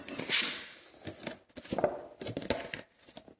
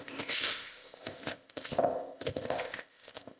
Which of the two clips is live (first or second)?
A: first